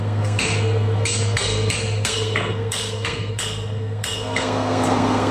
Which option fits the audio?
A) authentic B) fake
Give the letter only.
B